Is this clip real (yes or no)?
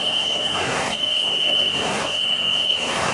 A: no